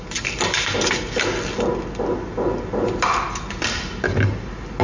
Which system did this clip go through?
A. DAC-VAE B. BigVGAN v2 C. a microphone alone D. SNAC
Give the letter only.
C